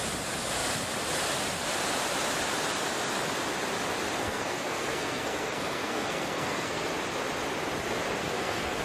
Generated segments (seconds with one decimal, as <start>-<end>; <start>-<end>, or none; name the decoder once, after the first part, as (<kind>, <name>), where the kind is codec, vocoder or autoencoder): 4.2-6.9 (codec, SNAC); 8.2-8.8